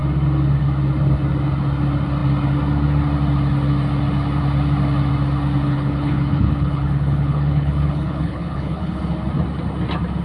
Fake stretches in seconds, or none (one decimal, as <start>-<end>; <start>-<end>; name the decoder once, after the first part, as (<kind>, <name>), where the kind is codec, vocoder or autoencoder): 5.6-9.0 (codec, HILCodec)